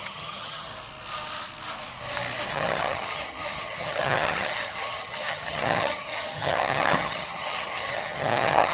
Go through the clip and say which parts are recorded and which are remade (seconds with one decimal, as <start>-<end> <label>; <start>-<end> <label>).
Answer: 0.0-0.7 remade; 0.7-2.5 recorded; 2.5-8.7 remade